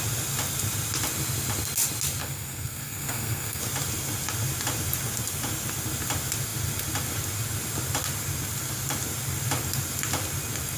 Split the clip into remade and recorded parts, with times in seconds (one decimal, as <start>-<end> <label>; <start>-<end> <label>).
0.0-2.2 recorded; 2.2-3.6 remade; 3.6-10.8 recorded